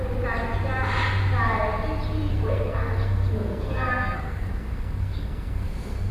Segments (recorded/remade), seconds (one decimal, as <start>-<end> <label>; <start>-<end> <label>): 0.0-2.3 recorded; 2.3-6.1 remade